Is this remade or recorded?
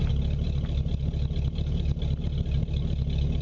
recorded